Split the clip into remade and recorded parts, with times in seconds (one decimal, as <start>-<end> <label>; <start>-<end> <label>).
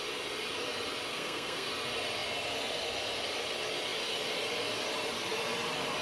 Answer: 0.0-1.1 recorded; 1.1-1.7 remade; 1.7-6.0 recorded